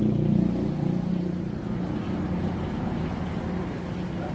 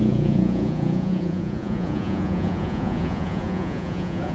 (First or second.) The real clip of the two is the first